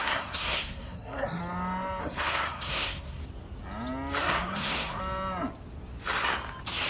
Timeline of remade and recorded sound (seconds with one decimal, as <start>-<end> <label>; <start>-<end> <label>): 0.0-1.4 remade; 1.4-2.0 recorded; 2.0-3.2 remade; 3.2-4.2 recorded; 4.2-5.0 remade; 5.0-6.9 recorded